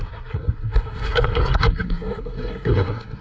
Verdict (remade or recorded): remade